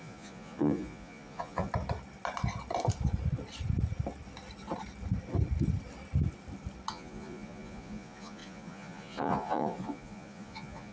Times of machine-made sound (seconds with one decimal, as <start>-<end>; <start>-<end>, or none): 0.0-1.7; 6.9-10.9